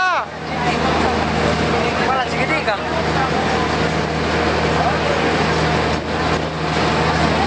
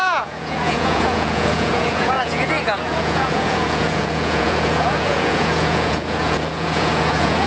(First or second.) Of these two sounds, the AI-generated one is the second